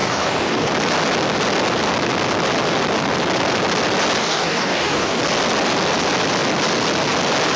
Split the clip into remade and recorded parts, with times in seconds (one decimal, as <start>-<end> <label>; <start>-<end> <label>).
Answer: 0.0-0.7 remade; 0.7-4.2 recorded; 4.2-5.2 remade; 5.2-7.6 recorded